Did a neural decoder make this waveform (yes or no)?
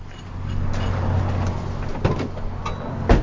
no